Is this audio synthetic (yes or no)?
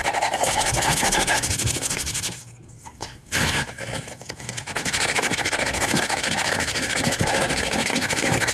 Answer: yes